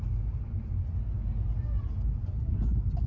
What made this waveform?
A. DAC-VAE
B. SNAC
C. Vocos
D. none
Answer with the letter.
D